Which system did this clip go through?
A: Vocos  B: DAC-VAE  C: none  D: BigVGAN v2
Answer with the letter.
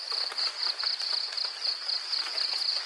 C